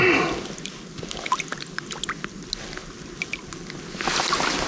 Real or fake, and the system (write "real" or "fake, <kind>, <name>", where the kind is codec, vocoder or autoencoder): real